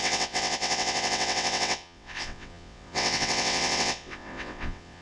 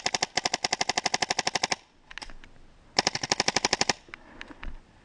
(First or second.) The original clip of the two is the second